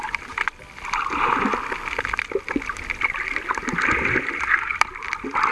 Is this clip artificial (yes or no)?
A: no